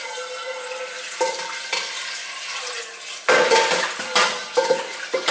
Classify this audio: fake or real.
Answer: fake